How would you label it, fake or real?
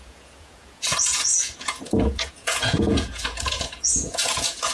fake